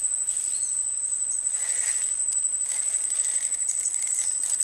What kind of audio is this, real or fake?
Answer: real